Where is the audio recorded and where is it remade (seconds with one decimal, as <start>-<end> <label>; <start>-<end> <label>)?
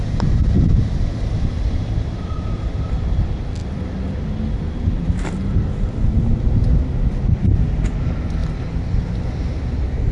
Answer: 0.0-10.1 recorded